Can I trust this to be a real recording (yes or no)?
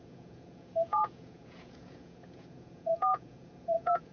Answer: no